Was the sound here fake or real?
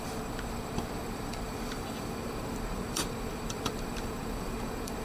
fake